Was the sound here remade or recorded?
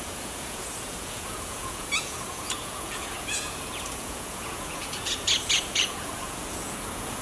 remade